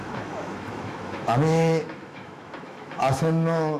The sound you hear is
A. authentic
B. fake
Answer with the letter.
B